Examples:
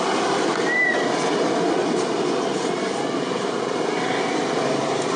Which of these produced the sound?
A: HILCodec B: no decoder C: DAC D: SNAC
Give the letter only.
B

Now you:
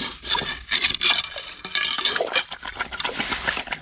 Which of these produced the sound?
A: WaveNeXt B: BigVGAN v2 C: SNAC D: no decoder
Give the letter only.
D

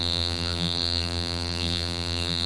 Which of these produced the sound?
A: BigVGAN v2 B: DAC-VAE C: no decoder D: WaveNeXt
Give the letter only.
A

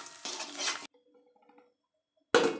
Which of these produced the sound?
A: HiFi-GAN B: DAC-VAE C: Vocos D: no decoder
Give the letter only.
D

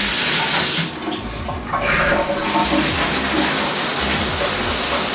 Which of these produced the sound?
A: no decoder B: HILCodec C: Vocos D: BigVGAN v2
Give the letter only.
A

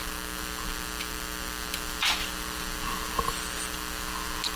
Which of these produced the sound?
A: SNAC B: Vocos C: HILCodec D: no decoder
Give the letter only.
D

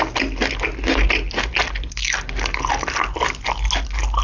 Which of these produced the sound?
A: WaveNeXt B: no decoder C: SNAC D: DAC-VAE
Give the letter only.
B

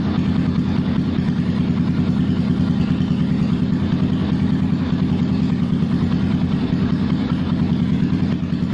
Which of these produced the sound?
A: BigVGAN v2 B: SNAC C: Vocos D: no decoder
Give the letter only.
D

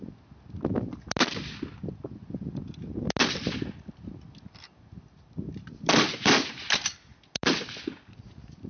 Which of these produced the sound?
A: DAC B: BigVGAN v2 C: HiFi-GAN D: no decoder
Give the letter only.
D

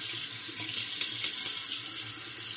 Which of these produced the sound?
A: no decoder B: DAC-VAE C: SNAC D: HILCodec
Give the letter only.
A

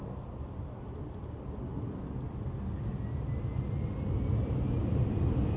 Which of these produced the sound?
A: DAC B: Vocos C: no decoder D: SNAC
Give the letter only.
C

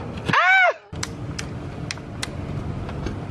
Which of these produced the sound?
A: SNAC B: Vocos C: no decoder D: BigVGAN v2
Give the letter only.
C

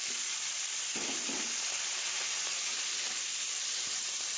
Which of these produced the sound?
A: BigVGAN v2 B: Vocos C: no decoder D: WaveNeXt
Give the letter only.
A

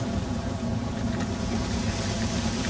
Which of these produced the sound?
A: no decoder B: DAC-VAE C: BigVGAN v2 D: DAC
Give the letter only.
A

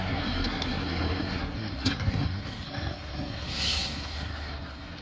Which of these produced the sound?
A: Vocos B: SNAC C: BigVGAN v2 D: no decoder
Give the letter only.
B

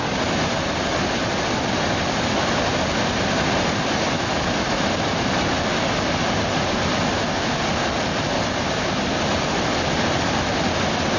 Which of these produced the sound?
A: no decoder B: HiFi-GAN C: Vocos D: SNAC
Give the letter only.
A